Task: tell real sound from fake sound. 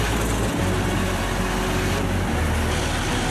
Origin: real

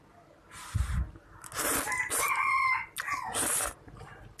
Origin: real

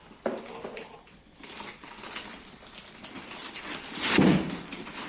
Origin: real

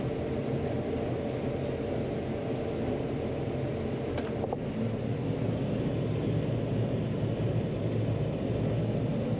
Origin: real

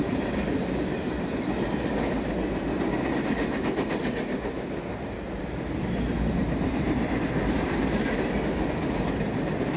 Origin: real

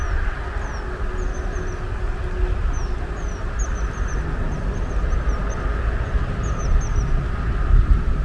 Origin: real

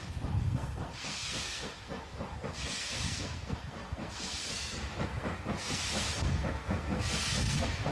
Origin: fake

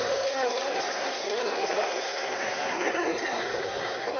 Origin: fake